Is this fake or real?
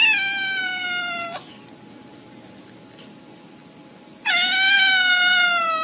real